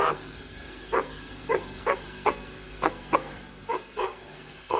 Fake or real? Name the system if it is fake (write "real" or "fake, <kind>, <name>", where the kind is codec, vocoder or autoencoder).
fake, codec, SNAC